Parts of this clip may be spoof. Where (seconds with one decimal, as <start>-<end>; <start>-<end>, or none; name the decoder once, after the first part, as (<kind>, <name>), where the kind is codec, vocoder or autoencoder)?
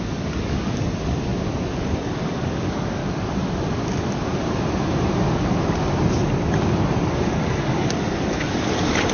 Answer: 0.0-1.3 (codec, DAC); 2.0-3.0; 7.1-9.1